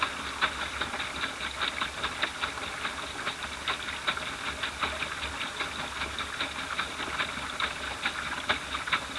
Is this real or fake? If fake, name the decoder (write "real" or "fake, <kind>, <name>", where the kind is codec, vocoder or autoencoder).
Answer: real